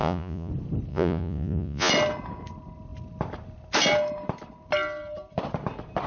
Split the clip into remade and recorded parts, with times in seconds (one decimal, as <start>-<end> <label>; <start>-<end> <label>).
0.0-0.5 remade; 0.5-0.9 recorded; 0.9-1.9 remade; 1.9-6.1 recorded